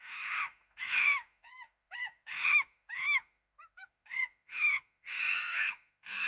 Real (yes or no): no